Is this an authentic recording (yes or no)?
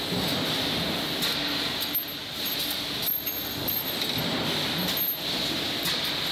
yes